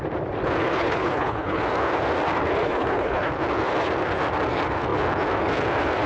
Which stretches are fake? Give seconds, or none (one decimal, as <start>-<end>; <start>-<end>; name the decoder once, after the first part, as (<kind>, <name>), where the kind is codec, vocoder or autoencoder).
0.7-1.6 (codec, HILCodec); 2.6-3.3